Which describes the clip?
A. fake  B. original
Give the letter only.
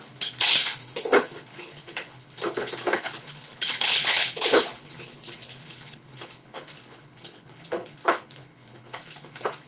A